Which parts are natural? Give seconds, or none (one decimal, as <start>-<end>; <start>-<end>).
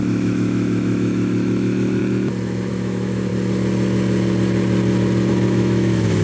2.0-2.7; 3.3-5.3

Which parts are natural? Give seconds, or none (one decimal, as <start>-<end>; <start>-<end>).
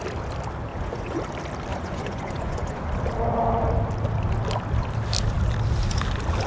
0.0-0.7; 1.2-1.7; 2.8-6.5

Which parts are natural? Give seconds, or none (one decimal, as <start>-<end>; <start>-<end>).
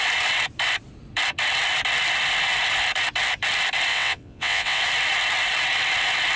0.0-3.9; 4.8-6.4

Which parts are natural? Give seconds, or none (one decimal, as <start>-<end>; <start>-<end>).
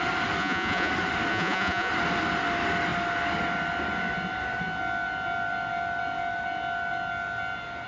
0.0-0.4; 0.9-1.3; 1.9-7.9